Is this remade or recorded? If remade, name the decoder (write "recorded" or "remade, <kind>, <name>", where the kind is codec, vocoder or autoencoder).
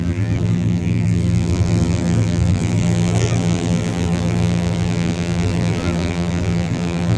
remade, vocoder, BigVGAN v2